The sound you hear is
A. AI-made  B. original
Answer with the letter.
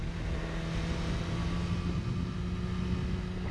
B